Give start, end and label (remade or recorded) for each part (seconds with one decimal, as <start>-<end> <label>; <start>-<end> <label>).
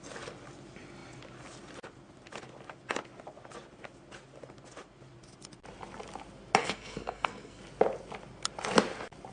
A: 0.0-6.6 recorded; 6.6-7.6 remade; 7.6-9.3 recorded